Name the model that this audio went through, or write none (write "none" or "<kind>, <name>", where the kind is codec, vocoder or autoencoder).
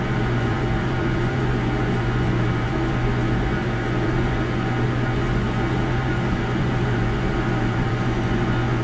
vocoder, Vocos